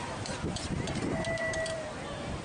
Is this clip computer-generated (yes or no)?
yes